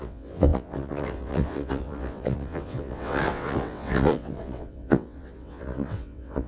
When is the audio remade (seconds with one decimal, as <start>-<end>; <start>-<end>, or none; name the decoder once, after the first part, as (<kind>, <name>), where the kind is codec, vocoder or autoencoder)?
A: 0.0-6.5 (vocoder, WaveNeXt)